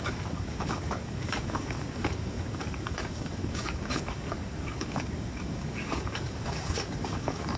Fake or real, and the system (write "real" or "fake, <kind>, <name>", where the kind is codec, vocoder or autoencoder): fake, codec, DAC